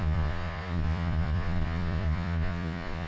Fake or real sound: fake